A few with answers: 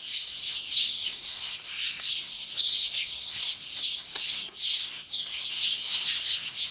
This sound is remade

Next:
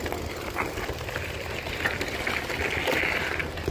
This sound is recorded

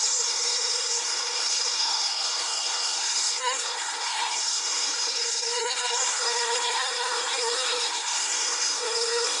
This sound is remade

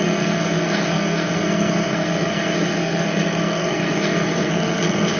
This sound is remade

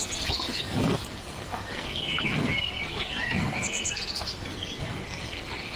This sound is remade